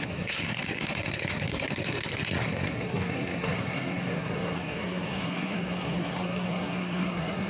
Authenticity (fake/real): fake